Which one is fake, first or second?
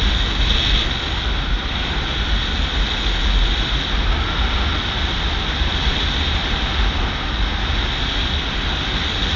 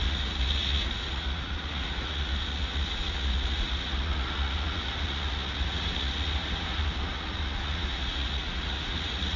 second